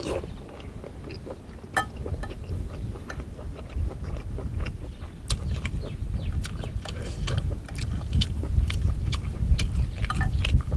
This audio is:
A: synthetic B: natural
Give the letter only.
B